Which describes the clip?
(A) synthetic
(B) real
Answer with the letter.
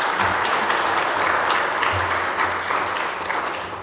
B